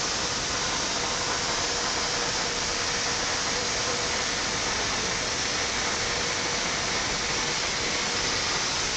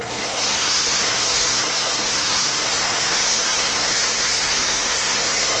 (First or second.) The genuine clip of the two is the first